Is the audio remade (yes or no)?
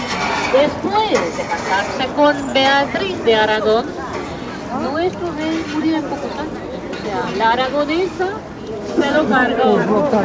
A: no